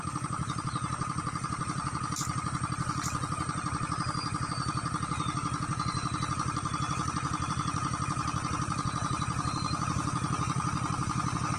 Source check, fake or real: fake